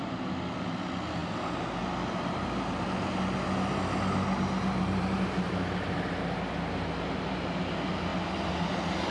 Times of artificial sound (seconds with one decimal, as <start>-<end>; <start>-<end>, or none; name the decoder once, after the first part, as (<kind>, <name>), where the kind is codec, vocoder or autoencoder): none